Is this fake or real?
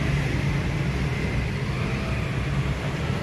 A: real